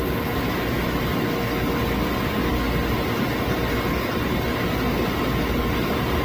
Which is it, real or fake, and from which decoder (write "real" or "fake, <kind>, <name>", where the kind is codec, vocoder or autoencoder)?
real